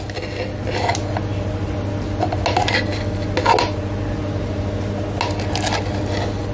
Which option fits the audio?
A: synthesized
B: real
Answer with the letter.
B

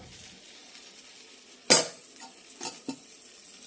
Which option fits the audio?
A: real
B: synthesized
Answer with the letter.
A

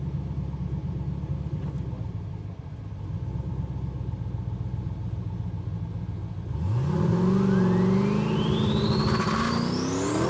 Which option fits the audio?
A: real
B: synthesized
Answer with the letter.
A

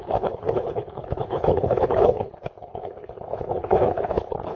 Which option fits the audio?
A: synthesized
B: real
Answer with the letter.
A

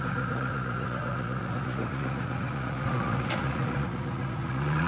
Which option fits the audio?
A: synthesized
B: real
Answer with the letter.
A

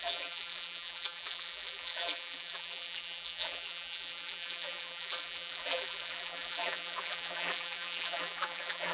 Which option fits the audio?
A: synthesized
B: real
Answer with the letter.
A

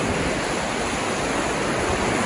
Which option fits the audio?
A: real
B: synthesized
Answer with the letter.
A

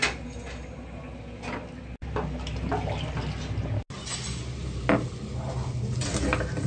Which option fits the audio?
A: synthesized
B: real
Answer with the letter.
B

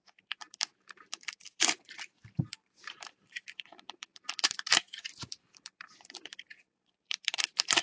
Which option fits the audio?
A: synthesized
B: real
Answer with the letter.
A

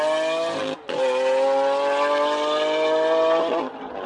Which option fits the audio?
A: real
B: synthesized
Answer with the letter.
A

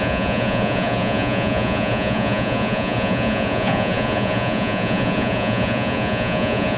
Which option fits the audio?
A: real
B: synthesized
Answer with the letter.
B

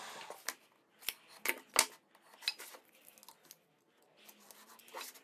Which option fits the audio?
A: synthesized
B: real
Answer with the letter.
B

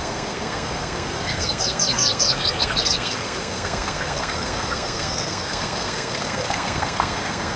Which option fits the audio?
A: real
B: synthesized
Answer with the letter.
B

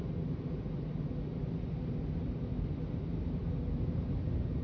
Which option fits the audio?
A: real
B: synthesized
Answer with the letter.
A